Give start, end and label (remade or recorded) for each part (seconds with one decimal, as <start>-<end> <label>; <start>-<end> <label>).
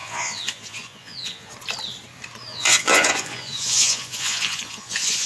0.0-1.5 remade; 1.5-2.5 recorded; 2.5-5.3 remade